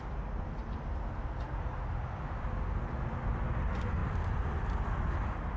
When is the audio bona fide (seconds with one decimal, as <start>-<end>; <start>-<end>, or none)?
0.0-4.0